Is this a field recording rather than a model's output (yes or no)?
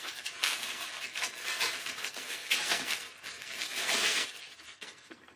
no